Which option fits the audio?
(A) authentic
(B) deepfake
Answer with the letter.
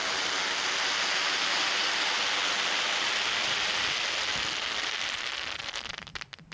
A